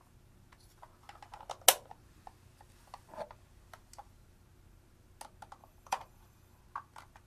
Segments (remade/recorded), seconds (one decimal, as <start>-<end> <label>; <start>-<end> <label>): 0.0-5.6 recorded; 5.6-6.6 remade; 6.6-7.3 recorded